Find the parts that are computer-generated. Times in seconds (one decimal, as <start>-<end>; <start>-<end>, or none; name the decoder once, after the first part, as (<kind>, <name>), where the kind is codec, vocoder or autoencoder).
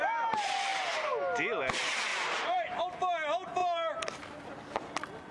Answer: 2.1-2.8 (vocoder, BigVGAN v2); 3.6-4.4